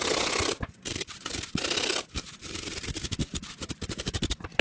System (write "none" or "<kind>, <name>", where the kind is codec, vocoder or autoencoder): none